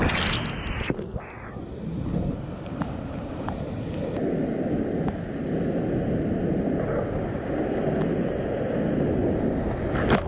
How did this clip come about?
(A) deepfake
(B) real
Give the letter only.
B